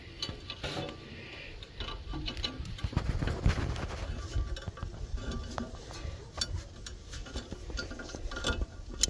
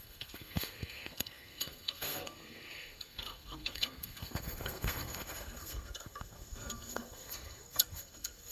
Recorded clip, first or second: first